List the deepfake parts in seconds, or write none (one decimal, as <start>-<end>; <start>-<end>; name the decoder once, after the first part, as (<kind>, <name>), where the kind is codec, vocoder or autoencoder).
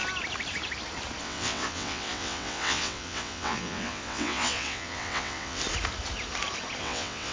1.2-5.6 (vocoder, WaveNeXt); 6.8-7.3